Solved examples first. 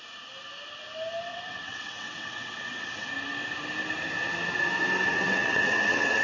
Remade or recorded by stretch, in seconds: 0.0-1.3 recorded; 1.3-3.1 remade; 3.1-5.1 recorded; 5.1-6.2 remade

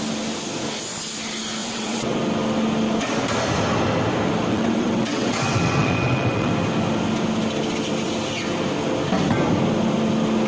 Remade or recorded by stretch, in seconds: 0.0-1.6 recorded; 1.6-2.2 remade; 2.2-4.5 recorded; 4.5-6.5 remade; 6.5-10.5 recorded